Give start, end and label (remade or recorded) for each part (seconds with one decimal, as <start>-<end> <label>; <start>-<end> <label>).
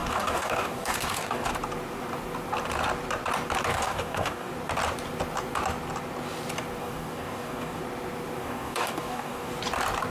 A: 0.0-1.5 remade; 1.5-3.7 recorded; 3.7-4.5 remade; 4.5-6.8 recorded; 6.8-7.8 remade; 7.8-8.4 recorded; 8.4-9.5 remade; 9.5-10.1 recorded